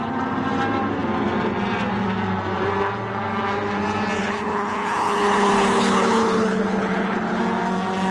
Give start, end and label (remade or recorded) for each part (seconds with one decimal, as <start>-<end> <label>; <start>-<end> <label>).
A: 0.0-4.2 recorded; 4.2-7.4 remade; 7.4-8.1 recorded